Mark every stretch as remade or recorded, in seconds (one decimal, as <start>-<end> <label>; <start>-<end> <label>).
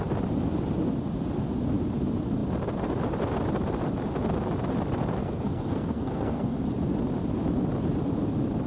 0.0-5.2 recorded; 5.2-6.6 remade; 6.6-8.7 recorded